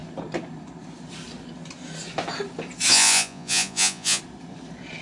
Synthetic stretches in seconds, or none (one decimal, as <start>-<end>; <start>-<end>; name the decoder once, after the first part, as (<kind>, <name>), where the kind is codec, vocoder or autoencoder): 2.9-4.2 (vocoder, Vocos)